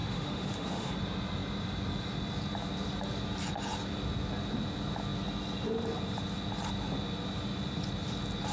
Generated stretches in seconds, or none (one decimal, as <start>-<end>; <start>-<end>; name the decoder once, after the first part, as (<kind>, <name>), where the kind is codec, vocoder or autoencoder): 0.0-0.9 (autoencoder, DAC-VAE)